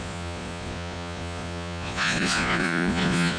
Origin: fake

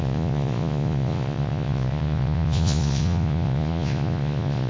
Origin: fake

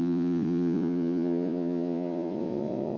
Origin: fake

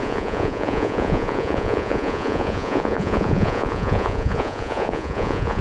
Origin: fake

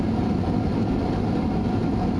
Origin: real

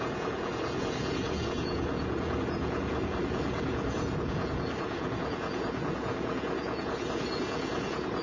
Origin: fake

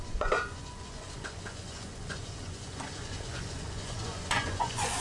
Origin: fake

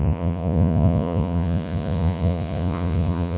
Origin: fake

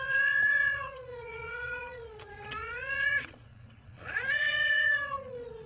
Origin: fake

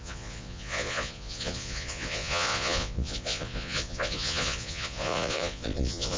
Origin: fake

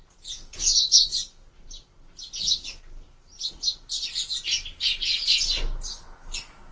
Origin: real